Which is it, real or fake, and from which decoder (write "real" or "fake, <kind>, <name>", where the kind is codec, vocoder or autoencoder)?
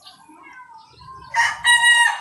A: real